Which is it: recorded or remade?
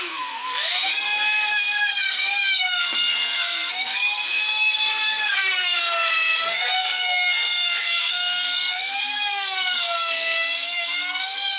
remade